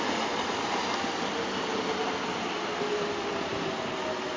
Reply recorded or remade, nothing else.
recorded